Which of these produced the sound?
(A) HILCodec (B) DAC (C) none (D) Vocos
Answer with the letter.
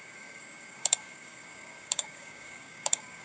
B